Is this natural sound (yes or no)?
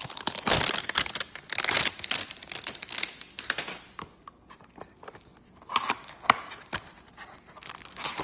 yes